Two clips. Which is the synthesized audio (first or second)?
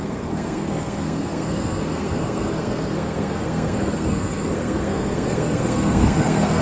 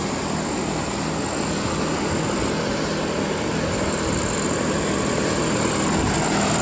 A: first